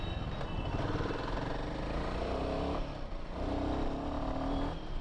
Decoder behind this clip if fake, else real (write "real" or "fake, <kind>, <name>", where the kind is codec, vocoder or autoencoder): real